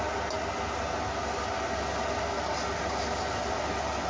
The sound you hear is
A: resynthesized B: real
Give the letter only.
B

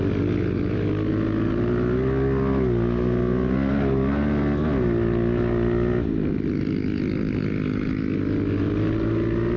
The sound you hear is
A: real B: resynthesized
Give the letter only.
A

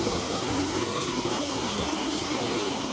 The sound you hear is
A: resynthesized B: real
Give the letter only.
A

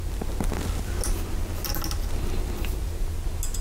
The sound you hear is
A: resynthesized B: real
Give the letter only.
B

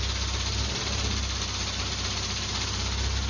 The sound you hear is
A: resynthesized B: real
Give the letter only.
B